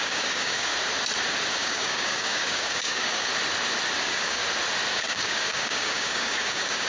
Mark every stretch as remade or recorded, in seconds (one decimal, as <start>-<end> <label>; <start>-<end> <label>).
0.0-0.7 remade; 0.7-1.5 recorded; 1.5-3.3 remade; 3.3-4.0 recorded; 4.0-4.4 remade; 4.4-4.9 recorded; 4.9-6.9 remade